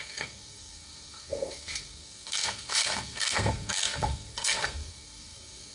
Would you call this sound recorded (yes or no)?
no